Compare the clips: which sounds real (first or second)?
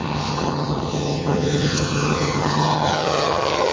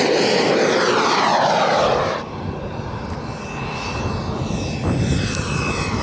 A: second